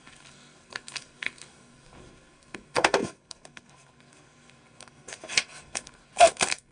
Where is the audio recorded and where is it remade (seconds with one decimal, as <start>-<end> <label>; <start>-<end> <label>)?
0.0-6.7 remade